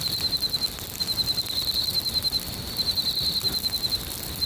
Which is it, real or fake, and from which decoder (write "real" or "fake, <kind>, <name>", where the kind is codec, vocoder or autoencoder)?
real